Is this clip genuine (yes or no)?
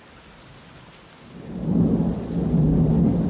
yes